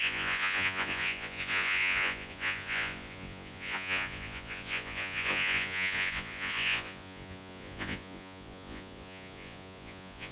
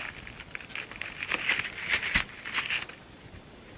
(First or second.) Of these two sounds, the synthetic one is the first